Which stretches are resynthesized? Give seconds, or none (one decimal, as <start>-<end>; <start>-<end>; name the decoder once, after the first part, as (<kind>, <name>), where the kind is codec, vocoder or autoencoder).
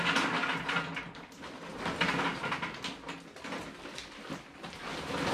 none